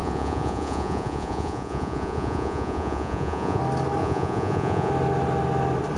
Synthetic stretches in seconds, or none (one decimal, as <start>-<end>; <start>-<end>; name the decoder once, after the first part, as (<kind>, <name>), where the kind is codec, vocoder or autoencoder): 0.0-3.6 (vocoder, Vocos); 4.0-4.9